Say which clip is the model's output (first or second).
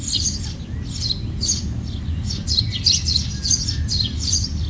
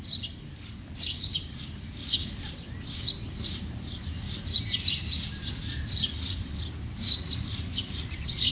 second